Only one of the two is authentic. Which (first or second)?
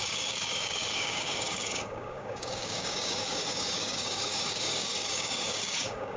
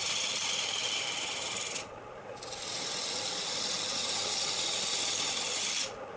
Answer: second